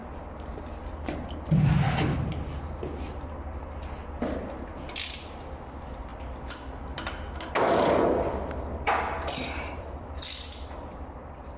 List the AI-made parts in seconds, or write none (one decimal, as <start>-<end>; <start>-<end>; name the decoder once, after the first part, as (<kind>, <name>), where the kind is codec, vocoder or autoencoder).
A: 3.8-4.7 (vocoder, BigVGAN v2); 5.2-6.1; 7.6-11.6